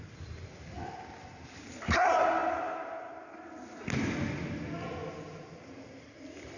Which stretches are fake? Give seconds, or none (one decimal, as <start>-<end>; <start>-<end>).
none